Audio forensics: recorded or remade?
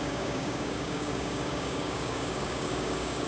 remade